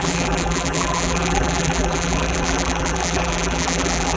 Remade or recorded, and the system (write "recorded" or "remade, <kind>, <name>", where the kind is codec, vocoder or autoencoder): remade, vocoder, BigVGAN v2